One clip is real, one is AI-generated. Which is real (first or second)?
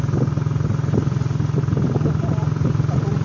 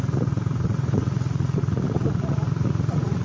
first